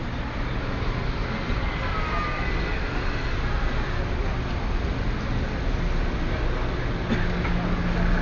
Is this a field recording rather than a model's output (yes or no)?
yes